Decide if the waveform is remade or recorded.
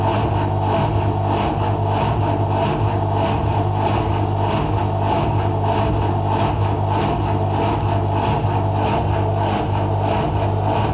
recorded